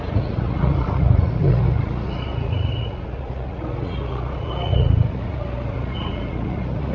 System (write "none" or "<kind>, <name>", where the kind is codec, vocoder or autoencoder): vocoder, Vocos